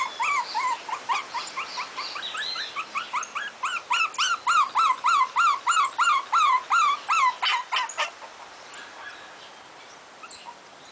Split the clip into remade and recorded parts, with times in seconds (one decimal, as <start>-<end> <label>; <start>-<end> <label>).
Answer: 0.0-1.2 recorded; 1.2-1.9 remade; 1.9-10.9 recorded